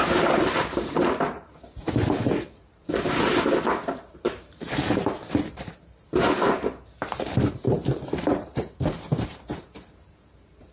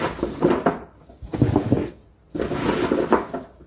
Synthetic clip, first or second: first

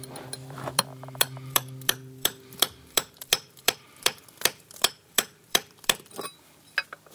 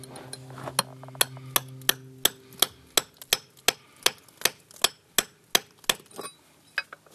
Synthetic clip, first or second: first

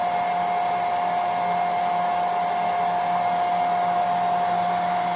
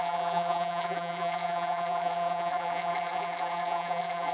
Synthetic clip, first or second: second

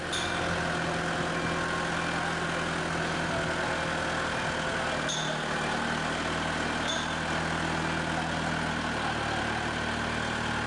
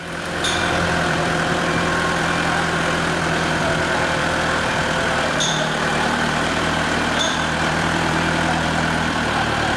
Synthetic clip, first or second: second